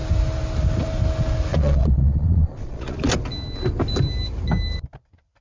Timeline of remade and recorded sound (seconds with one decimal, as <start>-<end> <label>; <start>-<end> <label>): 0.0-1.5 recorded; 1.5-3.1 remade; 3.1-5.4 recorded